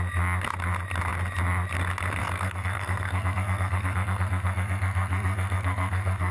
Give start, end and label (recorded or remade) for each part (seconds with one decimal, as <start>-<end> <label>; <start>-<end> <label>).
0.0-2.2 recorded; 2.2-6.3 remade